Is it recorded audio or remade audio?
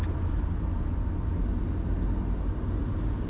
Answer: recorded